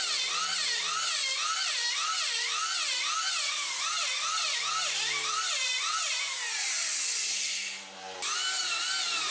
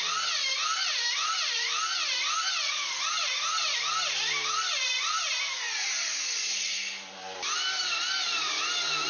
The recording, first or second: first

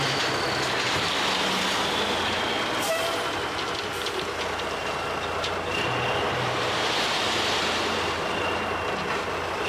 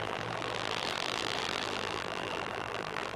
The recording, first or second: first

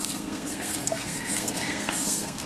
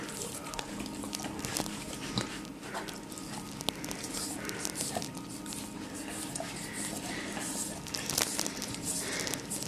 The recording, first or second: second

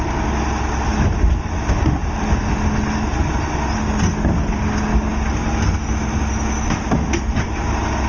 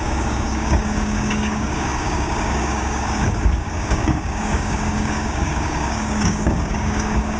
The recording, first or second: first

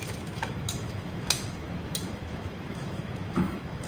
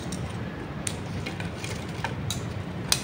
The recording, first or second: second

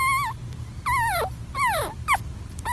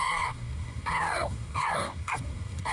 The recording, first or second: first